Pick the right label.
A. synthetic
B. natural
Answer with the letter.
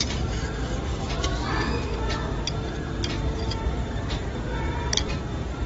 B